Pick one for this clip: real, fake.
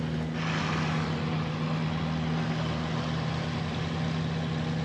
real